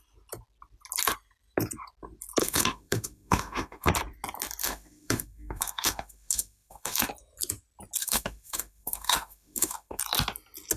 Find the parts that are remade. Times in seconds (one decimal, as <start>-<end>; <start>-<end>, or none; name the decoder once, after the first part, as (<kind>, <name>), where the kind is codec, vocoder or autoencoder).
2.4-3.9 (autoencoder, DAC-VAE); 4.6-7.1; 8.0-10.0